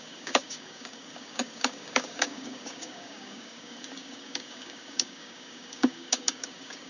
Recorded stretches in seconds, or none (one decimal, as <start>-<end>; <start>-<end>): none